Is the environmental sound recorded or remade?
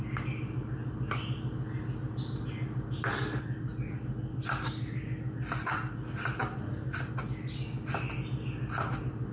recorded